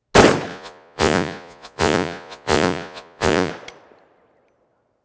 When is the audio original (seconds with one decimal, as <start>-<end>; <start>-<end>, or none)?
0.0-0.5; 3.5-5.0